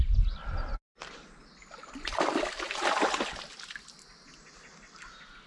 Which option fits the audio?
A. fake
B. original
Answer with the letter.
B